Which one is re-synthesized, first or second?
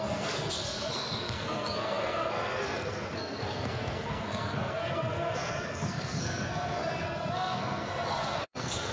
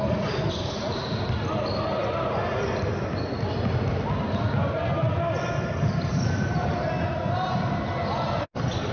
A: first